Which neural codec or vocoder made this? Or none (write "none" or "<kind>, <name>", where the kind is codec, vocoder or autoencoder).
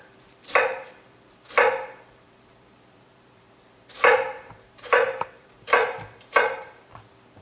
vocoder, BigVGAN v2